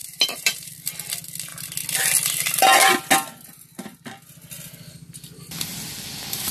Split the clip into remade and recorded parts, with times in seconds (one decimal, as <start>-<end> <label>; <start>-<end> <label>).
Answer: 0.0-0.7 remade; 0.7-6.5 recorded